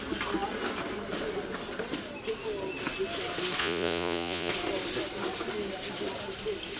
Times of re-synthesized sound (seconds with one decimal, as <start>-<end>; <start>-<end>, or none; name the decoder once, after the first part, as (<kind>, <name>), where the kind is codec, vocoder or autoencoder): 3.6-4.5 (vocoder, Vocos)